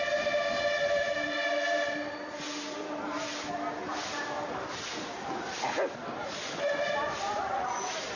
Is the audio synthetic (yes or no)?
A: no